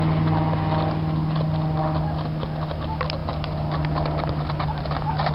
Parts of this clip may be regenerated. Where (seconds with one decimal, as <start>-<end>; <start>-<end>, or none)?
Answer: none